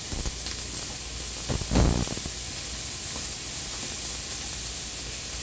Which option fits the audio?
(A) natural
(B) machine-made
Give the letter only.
A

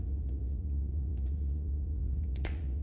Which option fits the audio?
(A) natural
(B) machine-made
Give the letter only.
B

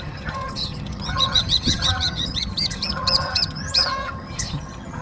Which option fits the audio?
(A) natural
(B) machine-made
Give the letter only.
B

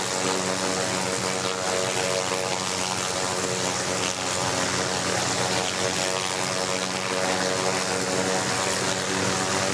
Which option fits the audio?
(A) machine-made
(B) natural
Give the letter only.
B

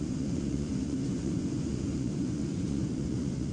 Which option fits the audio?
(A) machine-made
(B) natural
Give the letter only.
A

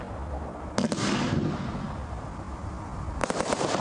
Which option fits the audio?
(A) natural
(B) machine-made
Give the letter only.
A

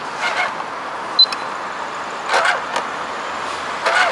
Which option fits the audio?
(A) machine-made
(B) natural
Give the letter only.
B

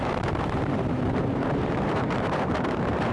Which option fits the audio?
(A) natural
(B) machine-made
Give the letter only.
B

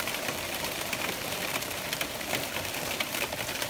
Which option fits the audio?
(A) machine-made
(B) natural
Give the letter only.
A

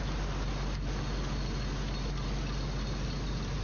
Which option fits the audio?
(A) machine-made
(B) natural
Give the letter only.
B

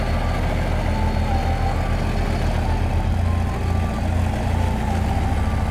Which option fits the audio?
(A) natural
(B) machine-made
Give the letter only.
A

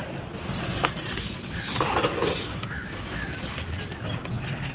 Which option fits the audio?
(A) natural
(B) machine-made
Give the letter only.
A